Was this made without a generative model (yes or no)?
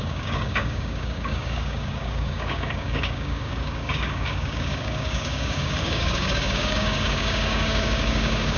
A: no